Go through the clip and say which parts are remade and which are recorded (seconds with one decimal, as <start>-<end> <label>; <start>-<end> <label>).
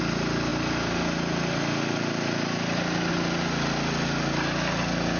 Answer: 0.0-5.2 recorded